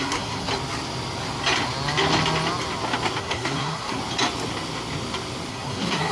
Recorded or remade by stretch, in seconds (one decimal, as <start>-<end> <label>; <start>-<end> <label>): 0.0-0.5 remade; 0.5-3.2 recorded; 3.2-4.0 remade; 4.0-5.5 recorded; 5.5-6.1 remade